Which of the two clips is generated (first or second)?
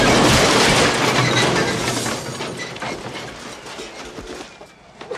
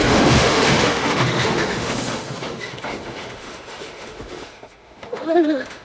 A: second